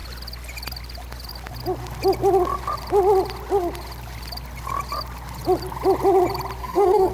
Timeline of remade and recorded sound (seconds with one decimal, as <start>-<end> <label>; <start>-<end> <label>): 0.0-6.6 recorded; 6.6-7.1 remade